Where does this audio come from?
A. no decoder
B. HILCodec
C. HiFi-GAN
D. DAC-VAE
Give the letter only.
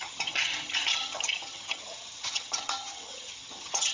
C